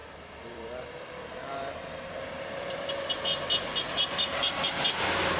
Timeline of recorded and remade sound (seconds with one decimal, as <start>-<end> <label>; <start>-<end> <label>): 0.0-3.2 remade; 3.2-3.7 recorded; 3.7-4.9 remade; 4.9-5.4 recorded

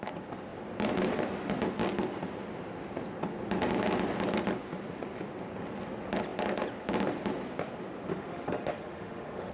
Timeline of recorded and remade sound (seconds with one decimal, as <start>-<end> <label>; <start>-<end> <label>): 0.0-8.1 recorded; 8.1-9.5 remade

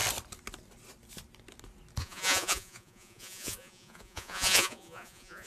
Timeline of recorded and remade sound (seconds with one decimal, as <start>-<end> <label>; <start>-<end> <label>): 0.0-2.0 recorded; 2.0-5.5 remade

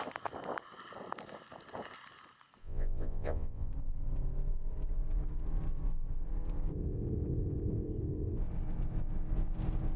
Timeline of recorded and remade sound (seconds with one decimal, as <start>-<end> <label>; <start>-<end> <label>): 0.0-2.6 recorded; 2.6-3.7 remade; 3.7-10.0 recorded

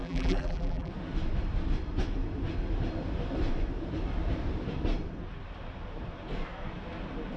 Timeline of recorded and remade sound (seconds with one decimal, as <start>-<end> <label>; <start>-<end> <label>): 0.0-0.9 remade; 0.9-7.4 recorded

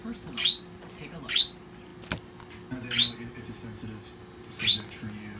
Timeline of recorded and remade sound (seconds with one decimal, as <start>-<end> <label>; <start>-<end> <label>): 0.0-5.4 recorded